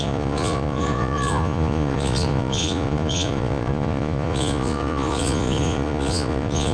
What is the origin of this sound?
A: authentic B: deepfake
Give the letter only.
B